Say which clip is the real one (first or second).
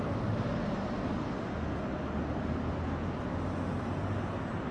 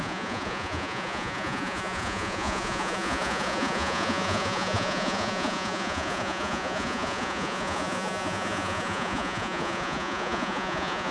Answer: first